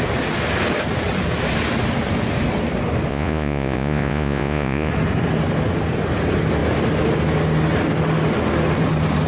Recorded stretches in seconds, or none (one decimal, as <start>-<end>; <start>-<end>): 0.0-3.1; 4.9-9.3